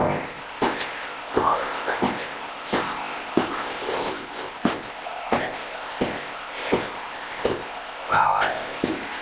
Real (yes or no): no